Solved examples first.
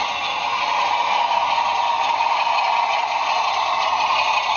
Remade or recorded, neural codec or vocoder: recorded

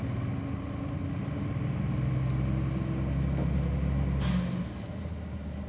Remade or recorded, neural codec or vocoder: recorded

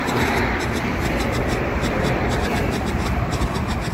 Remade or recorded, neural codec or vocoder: recorded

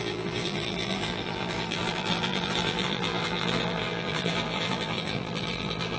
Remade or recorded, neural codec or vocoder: remade, vocoder, BigVGAN v2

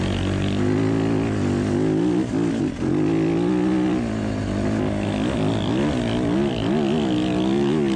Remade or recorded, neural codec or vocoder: recorded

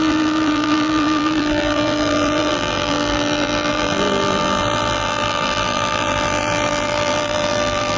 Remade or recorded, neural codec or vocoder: remade, vocoder, BigVGAN v2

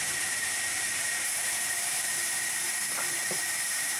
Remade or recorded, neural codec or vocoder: remade, vocoder, BigVGAN v2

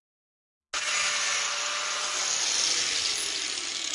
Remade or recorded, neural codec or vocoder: recorded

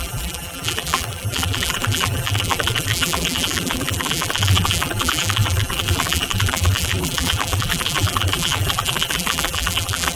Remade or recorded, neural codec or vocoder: remade, vocoder, BigVGAN v2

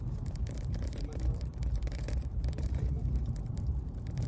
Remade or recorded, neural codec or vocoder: remade, vocoder, BigVGAN v2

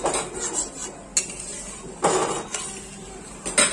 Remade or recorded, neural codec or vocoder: recorded